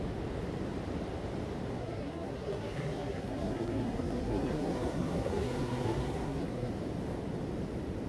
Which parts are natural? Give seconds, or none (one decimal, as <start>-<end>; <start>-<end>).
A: 0.0-1.8; 6.7-8.1